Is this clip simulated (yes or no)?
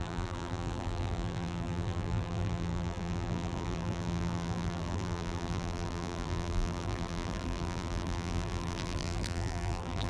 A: yes